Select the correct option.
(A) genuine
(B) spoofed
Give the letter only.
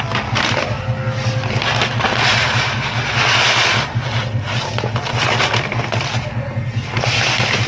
A